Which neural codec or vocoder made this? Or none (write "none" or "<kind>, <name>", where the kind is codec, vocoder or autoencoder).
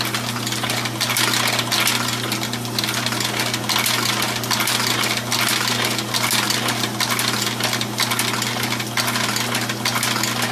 none